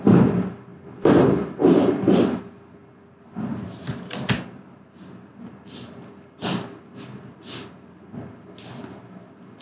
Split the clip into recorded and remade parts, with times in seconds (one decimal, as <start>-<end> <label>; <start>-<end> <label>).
0.0-9.6 recorded